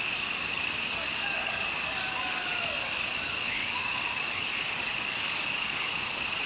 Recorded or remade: remade